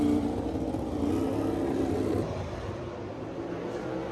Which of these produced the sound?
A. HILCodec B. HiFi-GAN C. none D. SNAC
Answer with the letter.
C